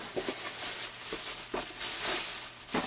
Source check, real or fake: real